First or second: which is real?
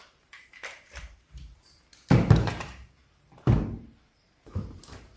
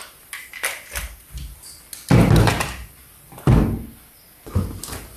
second